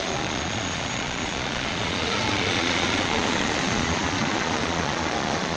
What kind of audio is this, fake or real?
fake